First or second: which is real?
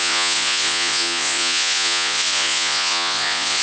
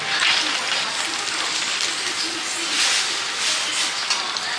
second